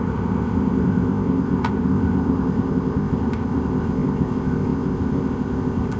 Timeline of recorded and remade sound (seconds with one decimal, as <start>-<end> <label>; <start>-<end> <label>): 0.0-6.0 remade